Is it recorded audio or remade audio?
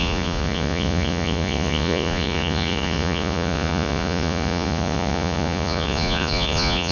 remade